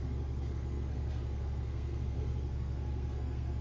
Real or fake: fake